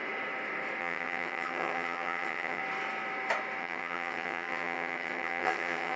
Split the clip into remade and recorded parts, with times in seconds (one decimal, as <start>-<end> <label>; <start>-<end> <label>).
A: 0.0-0.8 recorded; 0.8-2.6 remade; 2.6-3.6 recorded; 3.6-6.0 remade